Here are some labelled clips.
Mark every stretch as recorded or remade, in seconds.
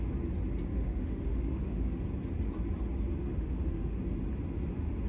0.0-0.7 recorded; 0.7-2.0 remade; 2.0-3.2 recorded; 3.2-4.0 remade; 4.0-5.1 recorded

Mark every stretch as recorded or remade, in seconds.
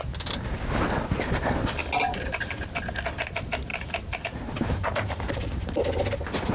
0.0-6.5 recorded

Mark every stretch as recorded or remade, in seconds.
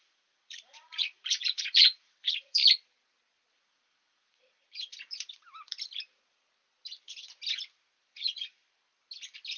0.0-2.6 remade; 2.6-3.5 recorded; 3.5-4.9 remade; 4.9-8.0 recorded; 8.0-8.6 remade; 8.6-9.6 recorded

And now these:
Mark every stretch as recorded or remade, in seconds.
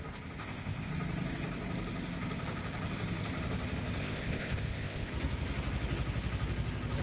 0.0-0.4 recorded; 0.4-0.9 remade; 0.9-4.0 recorded; 4.0-5.1 remade; 5.1-7.0 recorded